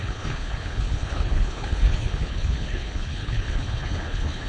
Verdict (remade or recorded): remade